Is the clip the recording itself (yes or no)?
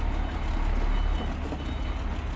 yes